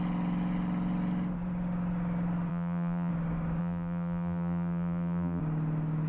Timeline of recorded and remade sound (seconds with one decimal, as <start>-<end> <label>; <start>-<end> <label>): 0.0-2.5 recorded; 2.5-3.1 remade; 3.1-3.6 recorded; 3.6-5.4 remade; 5.4-6.1 recorded